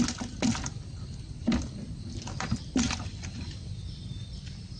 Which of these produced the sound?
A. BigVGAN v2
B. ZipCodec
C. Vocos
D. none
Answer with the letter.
D